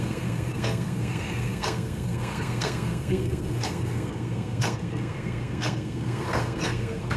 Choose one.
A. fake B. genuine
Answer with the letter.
A